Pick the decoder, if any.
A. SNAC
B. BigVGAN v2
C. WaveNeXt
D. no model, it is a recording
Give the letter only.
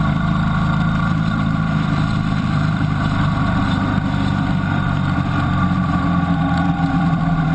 B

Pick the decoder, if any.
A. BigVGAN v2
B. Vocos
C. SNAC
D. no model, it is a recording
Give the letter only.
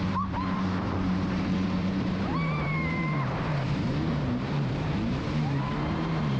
A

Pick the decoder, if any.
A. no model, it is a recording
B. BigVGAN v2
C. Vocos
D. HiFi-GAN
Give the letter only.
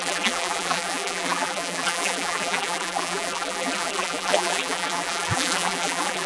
B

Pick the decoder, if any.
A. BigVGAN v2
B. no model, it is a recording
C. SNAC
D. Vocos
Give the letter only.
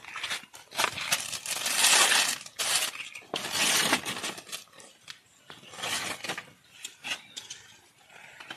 B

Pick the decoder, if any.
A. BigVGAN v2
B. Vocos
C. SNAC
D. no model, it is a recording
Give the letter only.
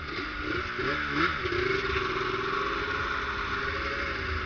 D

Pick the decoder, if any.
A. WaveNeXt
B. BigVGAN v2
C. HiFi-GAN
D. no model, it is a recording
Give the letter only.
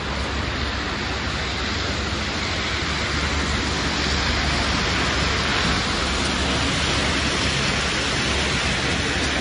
D